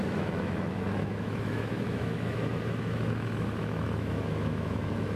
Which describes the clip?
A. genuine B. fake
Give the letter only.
B